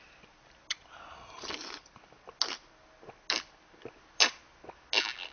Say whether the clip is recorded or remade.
recorded